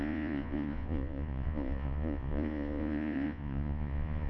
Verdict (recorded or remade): remade